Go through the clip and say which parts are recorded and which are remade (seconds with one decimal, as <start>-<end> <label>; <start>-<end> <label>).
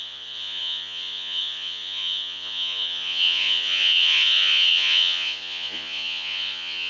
0.0-6.9 remade